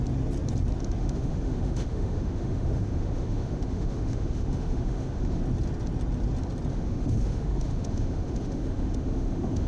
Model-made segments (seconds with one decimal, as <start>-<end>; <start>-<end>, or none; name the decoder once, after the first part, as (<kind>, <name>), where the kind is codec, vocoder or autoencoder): 1.0-5.4 (autoencoder, DAC-VAE); 6.7-9.7